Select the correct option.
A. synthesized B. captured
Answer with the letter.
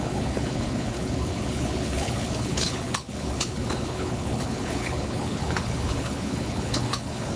A